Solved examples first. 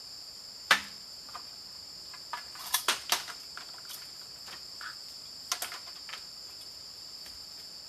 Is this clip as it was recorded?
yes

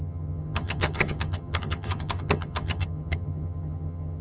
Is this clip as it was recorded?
no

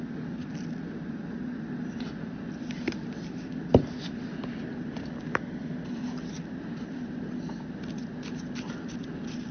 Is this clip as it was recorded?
yes